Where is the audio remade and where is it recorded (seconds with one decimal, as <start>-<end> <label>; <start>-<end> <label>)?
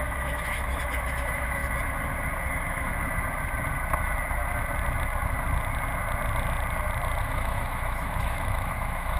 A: 0.0-1.6 remade; 1.6-2.5 recorded; 2.5-2.9 remade; 2.9-7.2 recorded; 7.2-9.2 remade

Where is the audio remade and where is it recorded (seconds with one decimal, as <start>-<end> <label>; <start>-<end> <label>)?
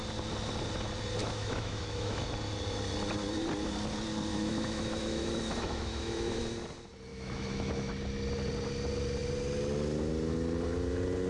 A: 0.0-1.2 recorded; 1.2-2.2 remade; 2.2-4.3 recorded; 4.3-6.4 remade; 6.4-7.1 recorded; 7.1-7.9 remade; 7.9-11.3 recorded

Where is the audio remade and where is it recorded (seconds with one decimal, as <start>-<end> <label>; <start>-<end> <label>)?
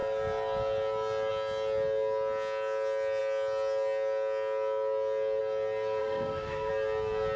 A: 0.0-6.0 recorded; 6.0-6.7 remade; 6.7-7.4 recorded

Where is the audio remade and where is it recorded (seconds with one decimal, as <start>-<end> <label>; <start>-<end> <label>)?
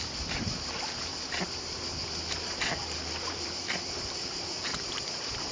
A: 0.0-1.1 recorded; 1.1-1.8 remade; 1.8-2.7 recorded; 2.7-4.9 remade; 4.9-5.5 recorded